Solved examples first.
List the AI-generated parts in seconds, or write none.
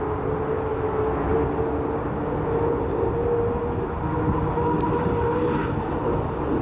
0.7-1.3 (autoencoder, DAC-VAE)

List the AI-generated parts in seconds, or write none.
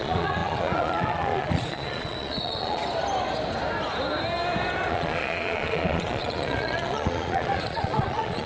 0.0-2.8 (vocoder, Vocos); 4.9-8.5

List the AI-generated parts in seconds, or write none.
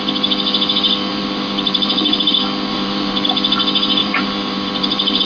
1.1-2.2 (vocoder, BigVGAN v2); 2.7-3.3; 4.0-5.2